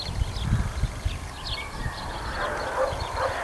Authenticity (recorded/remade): recorded